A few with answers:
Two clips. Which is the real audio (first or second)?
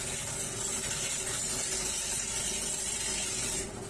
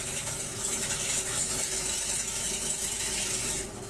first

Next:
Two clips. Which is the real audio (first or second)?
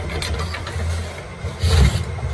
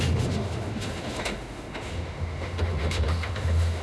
first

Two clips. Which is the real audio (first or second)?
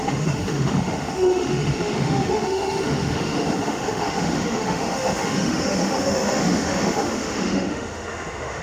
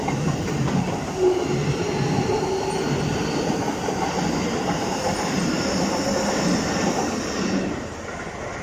second